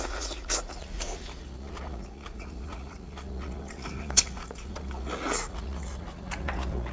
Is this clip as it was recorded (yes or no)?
no